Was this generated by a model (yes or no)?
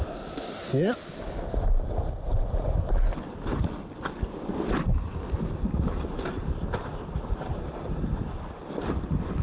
no